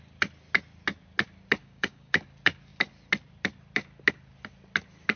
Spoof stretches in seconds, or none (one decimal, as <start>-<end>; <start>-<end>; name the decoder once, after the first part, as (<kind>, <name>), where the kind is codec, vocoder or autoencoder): 1.6-2.1 (codec, DAC)